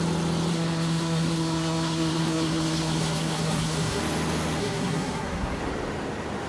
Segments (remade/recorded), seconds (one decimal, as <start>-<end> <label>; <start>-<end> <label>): 0.0-0.5 recorded; 0.5-4.0 remade; 4.0-4.6 recorded; 4.6-5.6 remade; 5.6-6.5 recorded